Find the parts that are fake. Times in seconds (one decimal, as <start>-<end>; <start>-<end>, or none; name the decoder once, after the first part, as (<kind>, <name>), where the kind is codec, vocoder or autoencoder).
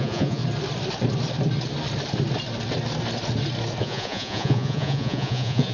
0.0-0.4 (vocoder, Vocos); 3.8-5.7